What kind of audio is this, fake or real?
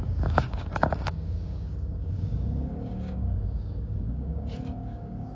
fake